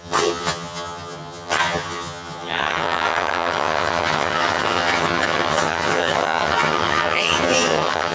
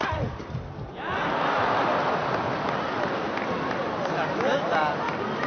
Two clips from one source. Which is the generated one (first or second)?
first